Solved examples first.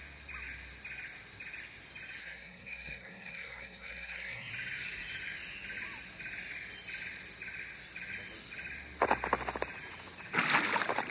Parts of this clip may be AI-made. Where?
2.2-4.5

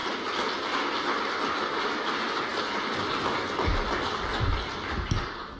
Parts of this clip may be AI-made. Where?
none

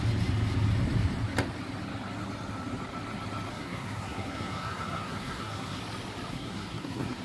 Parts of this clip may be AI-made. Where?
3.5-5.8; 6.3-7.2

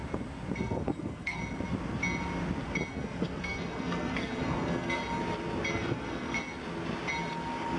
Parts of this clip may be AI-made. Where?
0.6-1.4; 2.9-5.0; 5.7-6.4

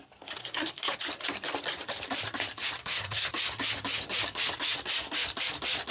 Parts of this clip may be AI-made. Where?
0.4-1.0; 2.8-3.3

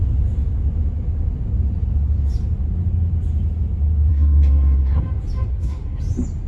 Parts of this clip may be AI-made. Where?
4.1-5.0; 5.5-6.0